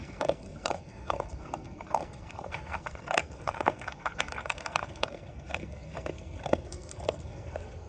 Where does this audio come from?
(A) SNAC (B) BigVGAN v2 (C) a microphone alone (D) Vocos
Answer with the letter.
A